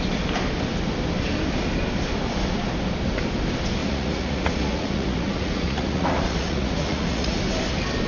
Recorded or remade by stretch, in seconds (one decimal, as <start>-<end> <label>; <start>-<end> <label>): 0.0-3.8 recorded; 3.8-7.4 remade; 7.4-8.1 recorded